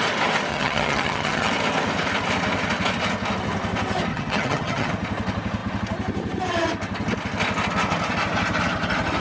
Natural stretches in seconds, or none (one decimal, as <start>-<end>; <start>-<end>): 0.0-0.5; 1.5-4.1; 4.9-9.2